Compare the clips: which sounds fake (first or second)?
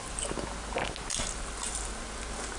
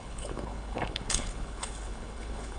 second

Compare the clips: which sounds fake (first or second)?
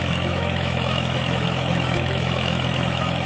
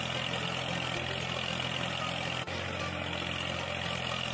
first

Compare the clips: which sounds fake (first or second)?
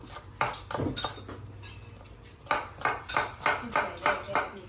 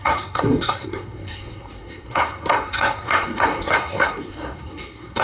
second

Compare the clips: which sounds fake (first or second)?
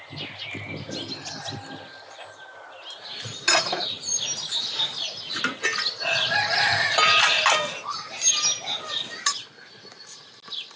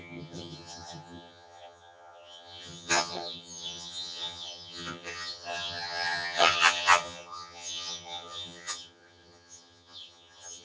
second